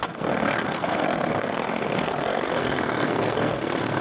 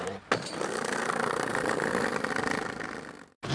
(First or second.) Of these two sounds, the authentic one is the second